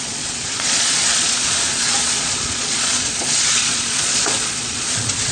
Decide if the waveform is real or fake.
fake